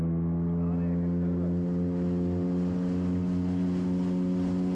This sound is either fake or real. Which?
real